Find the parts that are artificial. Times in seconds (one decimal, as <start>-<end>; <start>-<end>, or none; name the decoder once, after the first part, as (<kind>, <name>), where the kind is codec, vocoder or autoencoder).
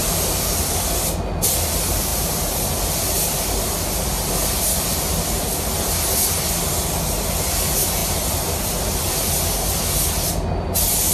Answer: 2.1-2.7 (vocoder, BigVGAN v2)